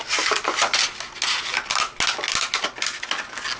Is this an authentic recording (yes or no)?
yes